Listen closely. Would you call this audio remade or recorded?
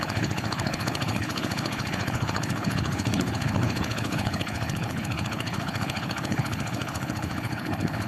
remade